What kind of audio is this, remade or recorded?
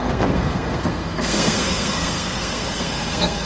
remade